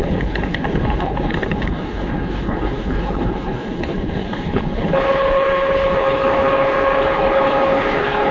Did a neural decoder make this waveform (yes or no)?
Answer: yes